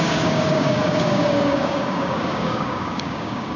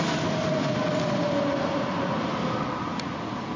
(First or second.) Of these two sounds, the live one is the second